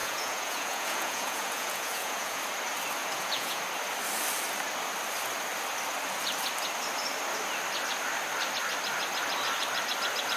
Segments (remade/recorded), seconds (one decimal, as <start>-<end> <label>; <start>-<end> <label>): 0.0-2.4 remade; 2.4-3.0 recorded; 3.0-3.6 remade; 3.6-10.4 recorded